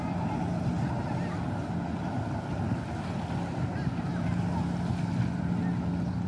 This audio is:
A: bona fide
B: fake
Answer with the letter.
A